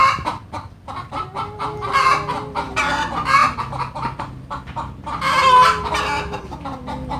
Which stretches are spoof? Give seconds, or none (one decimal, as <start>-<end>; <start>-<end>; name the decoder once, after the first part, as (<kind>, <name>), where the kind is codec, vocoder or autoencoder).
none